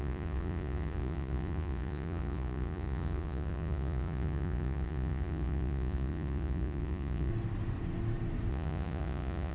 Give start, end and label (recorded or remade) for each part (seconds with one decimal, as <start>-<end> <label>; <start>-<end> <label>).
0.0-7.3 remade; 7.3-8.5 recorded; 8.5-9.5 remade